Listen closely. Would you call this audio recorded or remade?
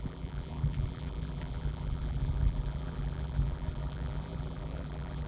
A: remade